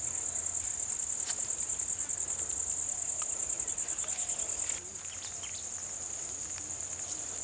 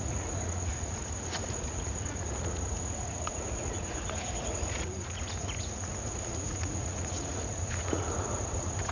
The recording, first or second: first